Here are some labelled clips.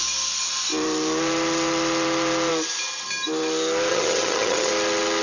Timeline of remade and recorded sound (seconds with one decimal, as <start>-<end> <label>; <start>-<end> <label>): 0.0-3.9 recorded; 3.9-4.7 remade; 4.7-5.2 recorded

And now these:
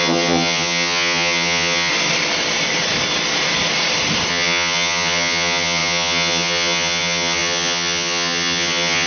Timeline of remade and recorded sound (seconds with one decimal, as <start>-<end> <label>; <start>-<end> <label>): 0.0-1.9 remade; 1.9-4.3 recorded; 4.3-9.1 remade

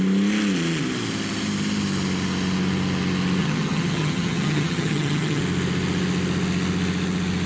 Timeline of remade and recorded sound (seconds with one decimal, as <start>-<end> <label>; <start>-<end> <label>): 0.0-3.4 recorded; 3.4-5.4 remade; 5.4-7.5 recorded